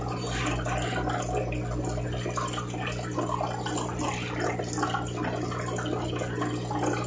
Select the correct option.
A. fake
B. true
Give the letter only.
B